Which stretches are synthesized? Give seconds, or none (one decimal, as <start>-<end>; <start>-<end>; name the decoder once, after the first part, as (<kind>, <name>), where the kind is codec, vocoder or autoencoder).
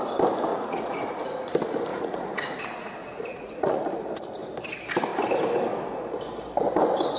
0.5-1.5 (vocoder, Vocos); 1.9-2.6; 3.0-3.8